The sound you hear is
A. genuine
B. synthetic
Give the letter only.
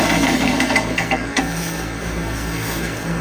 B